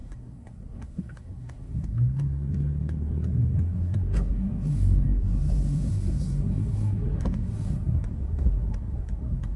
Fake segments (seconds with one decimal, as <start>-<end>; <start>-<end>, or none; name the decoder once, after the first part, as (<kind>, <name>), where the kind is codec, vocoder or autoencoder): 0.0-9.6 (codec, SNAC)